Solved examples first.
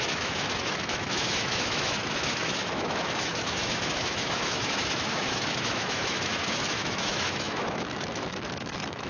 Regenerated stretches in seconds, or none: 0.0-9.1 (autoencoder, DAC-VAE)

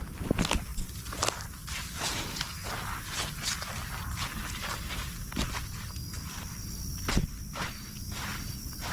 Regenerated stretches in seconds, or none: none

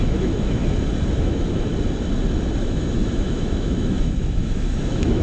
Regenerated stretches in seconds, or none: 0.0-0.6 (autoencoder, DAC-VAE); 1.1-1.7; 2.6-5.2